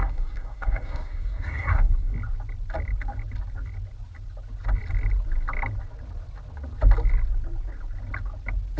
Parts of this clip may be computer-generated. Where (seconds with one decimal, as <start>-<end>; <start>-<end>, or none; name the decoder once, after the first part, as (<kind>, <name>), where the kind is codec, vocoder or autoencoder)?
0.0-2.1 (codec, SNAC)